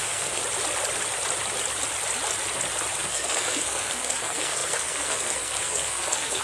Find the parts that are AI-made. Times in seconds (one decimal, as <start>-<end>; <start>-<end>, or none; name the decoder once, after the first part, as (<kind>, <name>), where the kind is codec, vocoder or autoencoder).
0.0-0.4 (codec, SNAC); 3.0-6.4